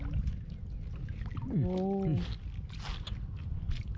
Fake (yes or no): no